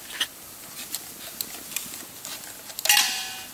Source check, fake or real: real